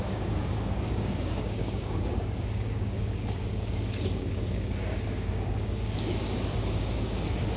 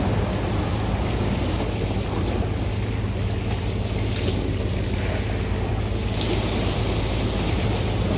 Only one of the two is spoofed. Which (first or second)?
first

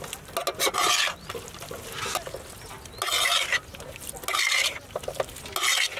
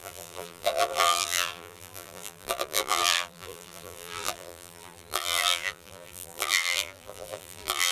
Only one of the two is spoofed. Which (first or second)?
second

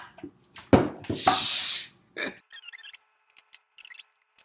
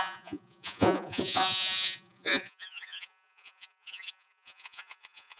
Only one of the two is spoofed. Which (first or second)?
second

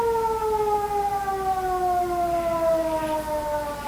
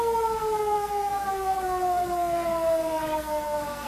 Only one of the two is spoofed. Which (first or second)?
second